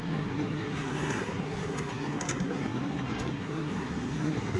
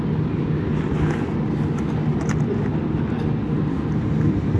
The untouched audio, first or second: second